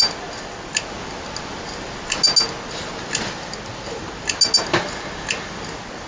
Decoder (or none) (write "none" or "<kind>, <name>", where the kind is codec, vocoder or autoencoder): none